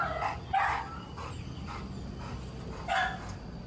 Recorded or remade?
recorded